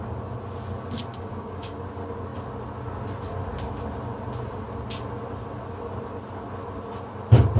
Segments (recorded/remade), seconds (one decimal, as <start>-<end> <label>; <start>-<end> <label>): 0.0-1.1 recorded; 1.1-1.8 remade; 1.8-7.6 recorded